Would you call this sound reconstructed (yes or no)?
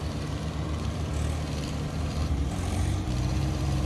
yes